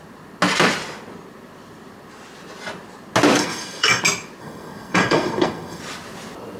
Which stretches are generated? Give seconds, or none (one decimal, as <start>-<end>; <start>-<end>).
3.4-4.0; 4.4-5.8